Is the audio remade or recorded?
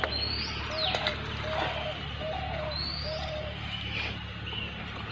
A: recorded